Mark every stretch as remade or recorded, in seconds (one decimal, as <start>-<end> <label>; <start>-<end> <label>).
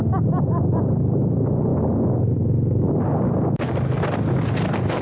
0.0-5.0 recorded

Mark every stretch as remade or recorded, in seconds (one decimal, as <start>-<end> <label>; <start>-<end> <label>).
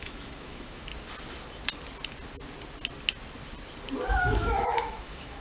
0.0-0.9 remade; 0.9-4.1 recorded; 4.1-5.4 remade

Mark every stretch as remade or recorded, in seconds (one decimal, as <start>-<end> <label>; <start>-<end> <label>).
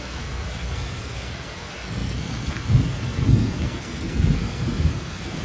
0.0-5.4 remade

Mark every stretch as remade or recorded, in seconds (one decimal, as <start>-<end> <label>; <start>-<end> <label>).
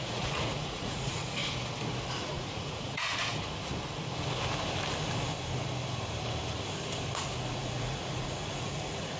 0.0-1.4 remade; 1.4-2.1 recorded; 2.1-3.3 remade; 3.3-7.5 recorded; 7.5-9.2 remade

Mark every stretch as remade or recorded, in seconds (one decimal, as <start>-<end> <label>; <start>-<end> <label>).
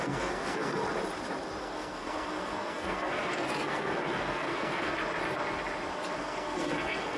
0.0-0.8 remade; 0.8-1.6 recorded; 1.6-4.9 remade; 4.9-6.2 recorded; 6.2-7.2 remade